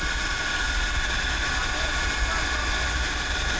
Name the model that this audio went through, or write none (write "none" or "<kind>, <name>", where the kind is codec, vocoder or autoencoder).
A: none